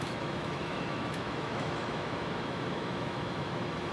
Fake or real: fake